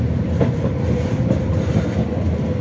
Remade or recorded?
recorded